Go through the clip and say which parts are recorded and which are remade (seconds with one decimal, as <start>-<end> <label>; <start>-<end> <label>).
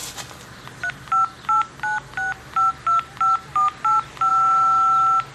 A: 0.0-5.3 recorded